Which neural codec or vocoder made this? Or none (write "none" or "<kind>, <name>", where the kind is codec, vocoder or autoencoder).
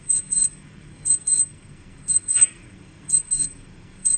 codec, SNAC